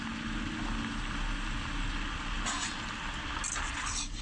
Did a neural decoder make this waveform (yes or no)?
no